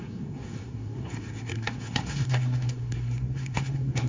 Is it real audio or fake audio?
fake